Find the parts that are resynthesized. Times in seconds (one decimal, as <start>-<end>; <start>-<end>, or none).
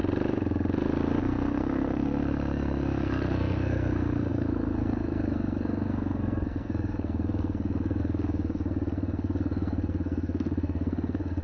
1.2-11.4